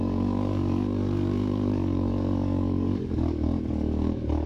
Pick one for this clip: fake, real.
fake